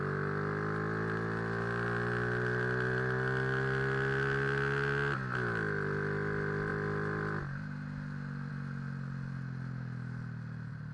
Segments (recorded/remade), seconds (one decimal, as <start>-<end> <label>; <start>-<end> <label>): 0.0-10.9 recorded